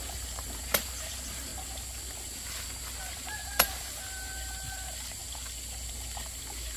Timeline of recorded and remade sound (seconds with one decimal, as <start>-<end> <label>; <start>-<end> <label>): 0.0-1.5 remade; 1.5-3.0 recorded; 3.0-5.2 remade; 5.2-6.8 recorded